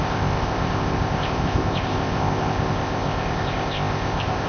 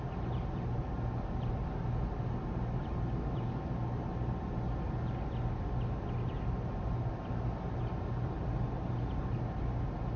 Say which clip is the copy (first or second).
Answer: first